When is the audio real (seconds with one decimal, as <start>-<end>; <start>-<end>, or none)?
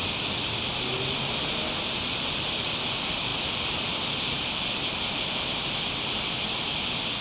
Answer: 0.0-7.2